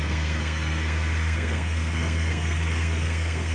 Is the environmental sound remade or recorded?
remade